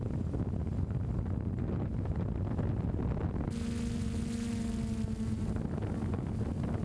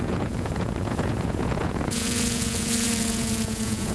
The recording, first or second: first